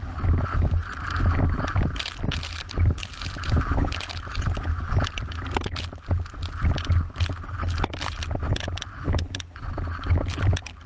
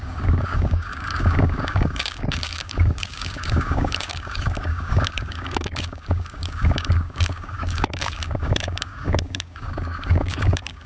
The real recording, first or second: first